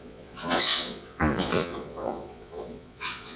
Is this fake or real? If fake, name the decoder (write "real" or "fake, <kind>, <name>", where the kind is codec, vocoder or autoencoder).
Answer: fake, vocoder, Vocos